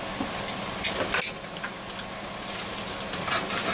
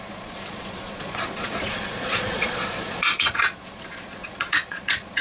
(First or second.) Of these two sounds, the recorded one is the first